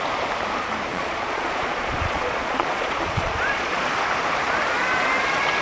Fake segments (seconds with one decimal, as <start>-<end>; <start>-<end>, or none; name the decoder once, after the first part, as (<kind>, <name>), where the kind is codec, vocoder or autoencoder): 0.9-3.8 (vocoder, Vocos)